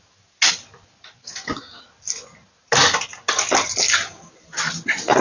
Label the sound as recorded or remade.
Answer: recorded